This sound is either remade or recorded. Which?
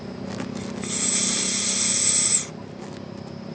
recorded